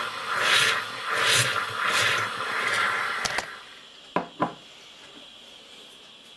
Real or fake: real